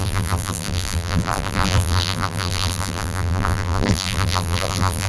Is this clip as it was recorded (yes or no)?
no